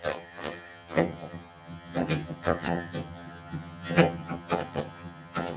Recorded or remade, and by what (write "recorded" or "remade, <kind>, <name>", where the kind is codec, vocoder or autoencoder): remade, vocoder, HiFi-GAN